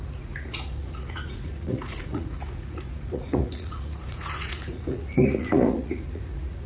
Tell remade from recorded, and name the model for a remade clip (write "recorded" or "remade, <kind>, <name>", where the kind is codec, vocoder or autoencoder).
remade, vocoder, Vocos